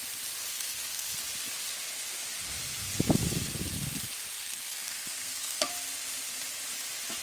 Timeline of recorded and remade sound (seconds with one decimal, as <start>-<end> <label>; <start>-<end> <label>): 0.0-0.5 recorded; 0.5-1.2 remade; 1.2-4.3 recorded; 4.3-5.7 remade; 5.7-7.2 recorded